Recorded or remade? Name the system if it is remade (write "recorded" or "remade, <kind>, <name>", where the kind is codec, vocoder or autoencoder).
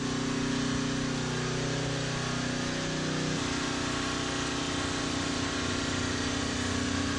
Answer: recorded